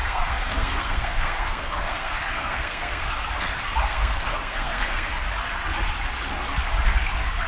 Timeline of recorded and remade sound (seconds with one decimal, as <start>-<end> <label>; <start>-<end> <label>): 0.0-3.1 remade; 3.1-3.9 recorded; 3.9-5.1 remade; 5.1-7.5 recorded